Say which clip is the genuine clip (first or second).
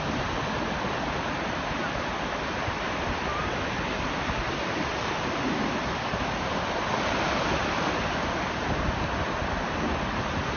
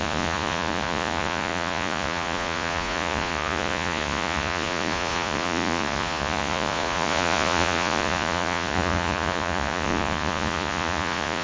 first